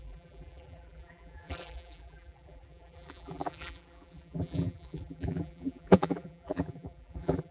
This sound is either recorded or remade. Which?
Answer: remade